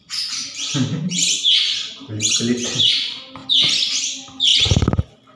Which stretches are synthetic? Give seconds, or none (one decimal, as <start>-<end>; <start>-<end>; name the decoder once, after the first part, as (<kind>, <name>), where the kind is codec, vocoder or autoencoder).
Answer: none